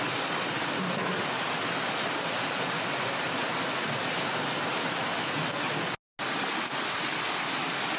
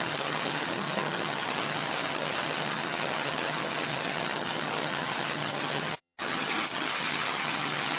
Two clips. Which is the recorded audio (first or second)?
first